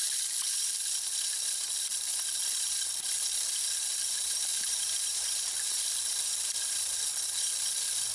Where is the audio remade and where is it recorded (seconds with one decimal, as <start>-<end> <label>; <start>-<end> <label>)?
0.0-4.5 recorded; 4.5-5.9 remade; 5.9-8.1 recorded